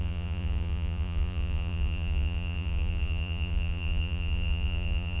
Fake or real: fake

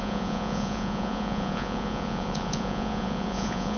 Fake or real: fake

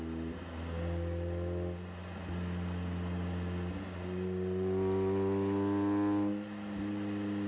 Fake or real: real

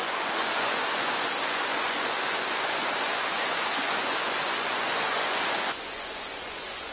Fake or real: fake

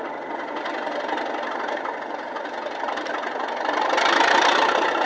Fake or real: real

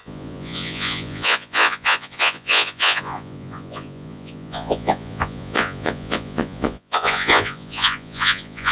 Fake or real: fake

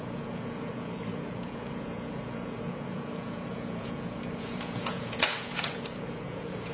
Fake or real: fake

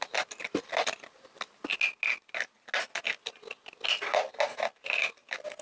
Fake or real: real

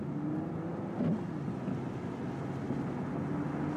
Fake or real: real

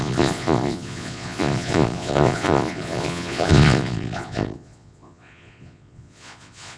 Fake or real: fake